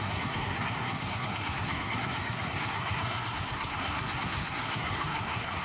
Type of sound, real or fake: fake